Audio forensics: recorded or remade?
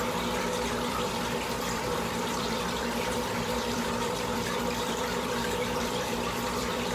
remade